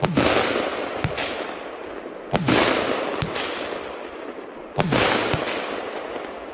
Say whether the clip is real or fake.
real